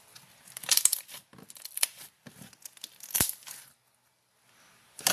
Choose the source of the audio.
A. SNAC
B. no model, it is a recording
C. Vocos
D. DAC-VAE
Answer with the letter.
B